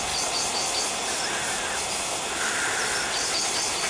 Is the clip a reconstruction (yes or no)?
no